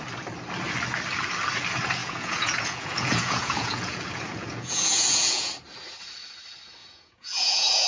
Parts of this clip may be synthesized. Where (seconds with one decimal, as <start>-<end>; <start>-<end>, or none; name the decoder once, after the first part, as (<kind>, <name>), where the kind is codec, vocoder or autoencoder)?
2.0-5.5 (vocoder, Vocos); 6.8-7.9